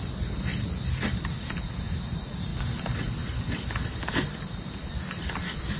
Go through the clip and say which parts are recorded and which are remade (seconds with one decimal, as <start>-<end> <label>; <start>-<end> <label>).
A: 0.0-5.8 recorded